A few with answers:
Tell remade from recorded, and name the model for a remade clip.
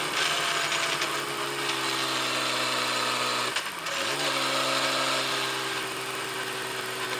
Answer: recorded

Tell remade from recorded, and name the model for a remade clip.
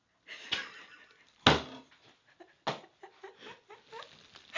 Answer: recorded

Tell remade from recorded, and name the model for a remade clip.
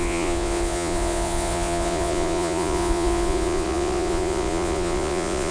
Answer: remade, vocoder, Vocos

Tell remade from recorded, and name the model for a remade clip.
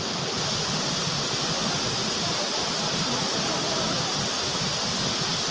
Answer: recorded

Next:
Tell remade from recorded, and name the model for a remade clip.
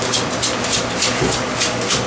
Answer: recorded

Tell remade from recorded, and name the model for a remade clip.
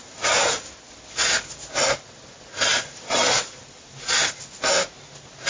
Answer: recorded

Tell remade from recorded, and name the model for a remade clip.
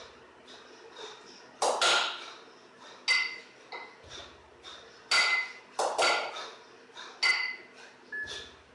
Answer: recorded